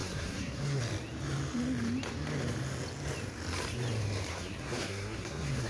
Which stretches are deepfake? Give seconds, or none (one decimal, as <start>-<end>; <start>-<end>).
0.0-0.8; 4.3-5.7